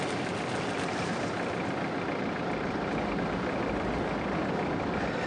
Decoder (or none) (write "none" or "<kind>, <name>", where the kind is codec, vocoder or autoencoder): none